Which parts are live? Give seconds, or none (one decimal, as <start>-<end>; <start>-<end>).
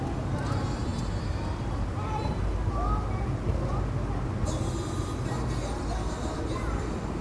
0.0-7.2